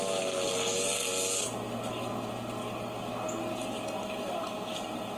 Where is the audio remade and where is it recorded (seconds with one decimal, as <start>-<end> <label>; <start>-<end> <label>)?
0.0-5.2 recorded

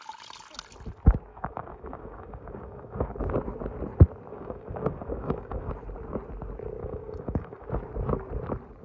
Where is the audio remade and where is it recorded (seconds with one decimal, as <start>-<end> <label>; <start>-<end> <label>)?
0.0-1.3 recorded; 1.3-3.1 remade; 3.1-4.3 recorded; 4.3-5.7 remade; 5.7-6.8 recorded; 6.8-7.7 remade; 7.7-8.8 recorded